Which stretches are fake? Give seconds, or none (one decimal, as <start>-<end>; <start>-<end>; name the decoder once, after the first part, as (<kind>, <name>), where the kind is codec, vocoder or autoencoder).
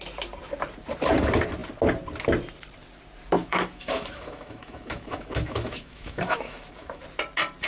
3.4-7.0 (autoencoder, DAC-VAE)